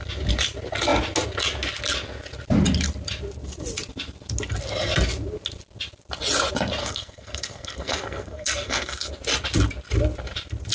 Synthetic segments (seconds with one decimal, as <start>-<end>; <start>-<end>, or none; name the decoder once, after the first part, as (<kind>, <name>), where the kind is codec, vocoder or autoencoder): 6.8-9.1 (codec, SNAC)

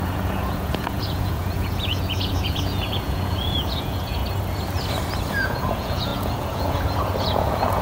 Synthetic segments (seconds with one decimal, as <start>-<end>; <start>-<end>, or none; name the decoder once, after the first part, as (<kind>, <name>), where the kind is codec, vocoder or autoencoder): 0.0-4.2 (vocoder, Vocos); 5.3-7.8

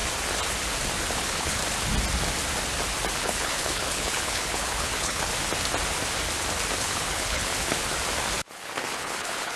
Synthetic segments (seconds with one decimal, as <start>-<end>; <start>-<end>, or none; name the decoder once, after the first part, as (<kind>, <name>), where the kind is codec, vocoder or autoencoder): 1.1-1.6 (codec, HILCodec); 3.2-5.3; 6.8-7.5; 8.5-9.6

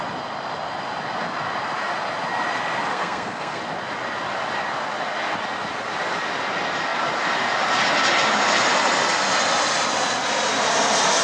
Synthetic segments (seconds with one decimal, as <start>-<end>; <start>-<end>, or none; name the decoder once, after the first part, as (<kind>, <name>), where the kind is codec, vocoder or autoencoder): 2.9-3.6 (codec, SNAC)

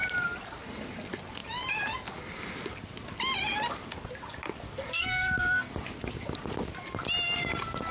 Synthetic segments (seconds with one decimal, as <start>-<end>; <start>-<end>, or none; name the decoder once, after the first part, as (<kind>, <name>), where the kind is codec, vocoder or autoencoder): 4.9-5.7 (codec, SNAC)

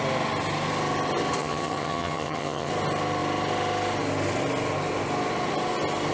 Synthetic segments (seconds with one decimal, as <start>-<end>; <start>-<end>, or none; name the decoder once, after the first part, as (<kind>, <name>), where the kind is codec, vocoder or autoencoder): 1.4-2.7 (vocoder, HiFi-GAN)